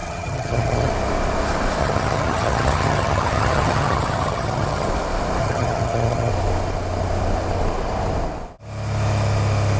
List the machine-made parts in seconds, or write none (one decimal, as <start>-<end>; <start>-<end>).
0.0-0.9; 1.8-4.9; 5.4-6.3